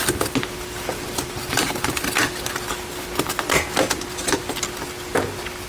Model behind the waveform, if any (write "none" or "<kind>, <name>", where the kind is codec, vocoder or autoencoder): none